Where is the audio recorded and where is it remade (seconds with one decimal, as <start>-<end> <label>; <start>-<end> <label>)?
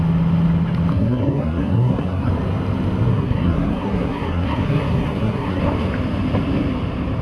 0.0-0.9 recorded; 0.9-2.3 remade; 2.3-3.1 recorded; 3.1-5.6 remade; 5.6-7.2 recorded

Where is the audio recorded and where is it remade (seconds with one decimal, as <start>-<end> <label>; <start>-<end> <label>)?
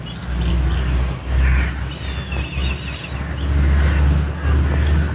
0.0-5.1 recorded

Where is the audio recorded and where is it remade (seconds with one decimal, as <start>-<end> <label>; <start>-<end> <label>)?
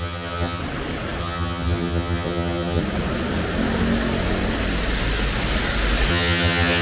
0.0-0.6 remade; 0.6-1.2 recorded; 1.2-2.8 remade; 2.8-6.1 recorded; 6.1-6.8 remade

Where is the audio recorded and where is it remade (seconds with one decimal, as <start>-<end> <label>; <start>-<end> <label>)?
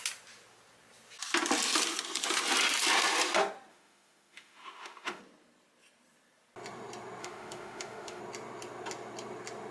0.0-3.7 recorded; 3.7-5.2 remade; 5.2-7.2 recorded; 7.2-8.2 remade; 8.2-9.7 recorded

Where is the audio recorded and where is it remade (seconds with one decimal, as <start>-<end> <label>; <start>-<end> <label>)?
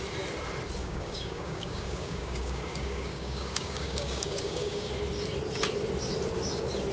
0.0-0.8 recorded; 0.8-4.9 remade; 4.9-6.9 recorded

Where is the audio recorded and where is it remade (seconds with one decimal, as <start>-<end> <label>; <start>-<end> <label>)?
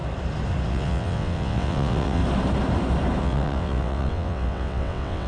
0.0-0.7 recorded; 0.7-2.2 remade; 2.2-3.2 recorded; 3.2-5.3 remade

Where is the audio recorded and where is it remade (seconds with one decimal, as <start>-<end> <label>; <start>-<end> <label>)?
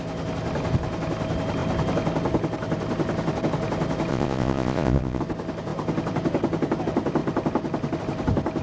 0.0-4.1 recorded; 4.1-5.2 remade; 5.2-8.6 recorded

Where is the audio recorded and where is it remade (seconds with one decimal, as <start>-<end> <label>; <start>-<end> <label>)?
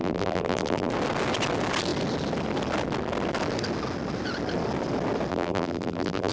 0.0-0.9 remade; 0.9-5.3 recorded; 5.3-6.3 remade